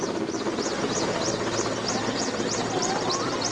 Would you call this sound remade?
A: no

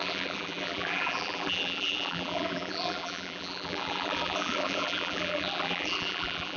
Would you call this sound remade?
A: yes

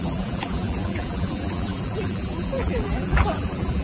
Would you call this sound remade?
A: yes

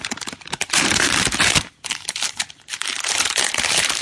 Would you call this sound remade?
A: yes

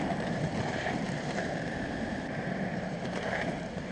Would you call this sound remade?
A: yes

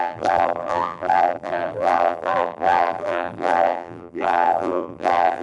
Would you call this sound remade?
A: yes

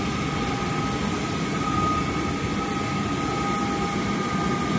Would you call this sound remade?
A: no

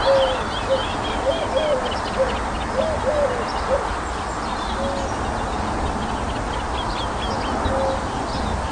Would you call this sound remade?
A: no